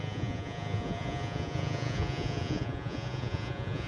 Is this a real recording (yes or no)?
no